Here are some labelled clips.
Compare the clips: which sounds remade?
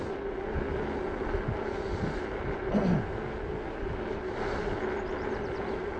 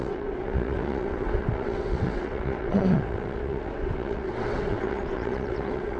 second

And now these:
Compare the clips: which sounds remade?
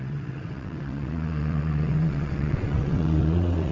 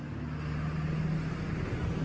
first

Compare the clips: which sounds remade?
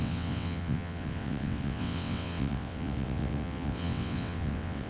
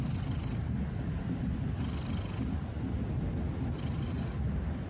first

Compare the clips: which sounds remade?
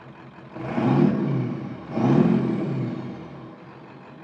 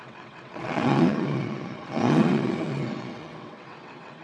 second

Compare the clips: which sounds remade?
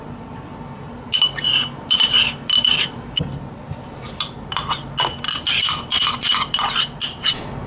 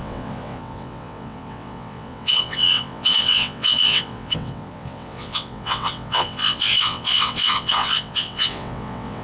second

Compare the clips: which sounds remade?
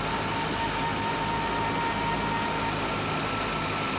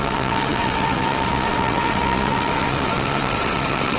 second